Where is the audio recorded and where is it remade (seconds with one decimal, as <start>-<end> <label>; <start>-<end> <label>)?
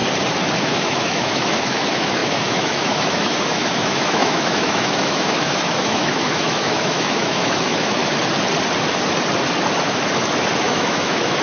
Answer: 0.0-0.6 recorded; 0.6-8.0 remade; 8.0-10.6 recorded; 10.6-11.4 remade